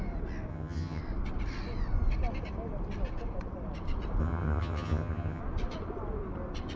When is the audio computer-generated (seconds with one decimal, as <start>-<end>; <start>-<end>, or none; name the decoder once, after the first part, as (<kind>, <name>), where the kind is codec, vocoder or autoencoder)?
0.5-1.0 (vocoder, HiFi-GAN); 4.2-5.4